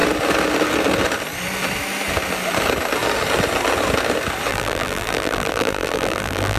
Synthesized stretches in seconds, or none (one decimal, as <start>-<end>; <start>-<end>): 4.5-6.6